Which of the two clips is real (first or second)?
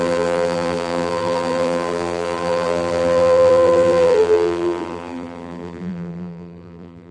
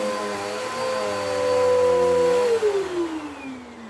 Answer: second